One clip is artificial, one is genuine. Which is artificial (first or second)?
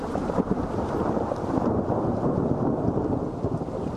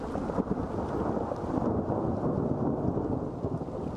first